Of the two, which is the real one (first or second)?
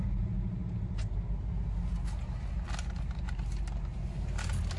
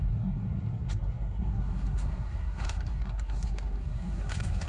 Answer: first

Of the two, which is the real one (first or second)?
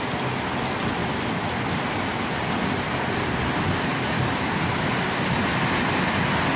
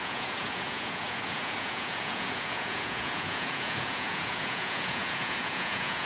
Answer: first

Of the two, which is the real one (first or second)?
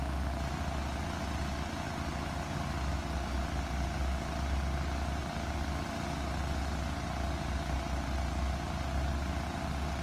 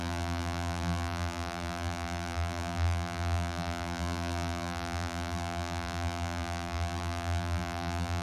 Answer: first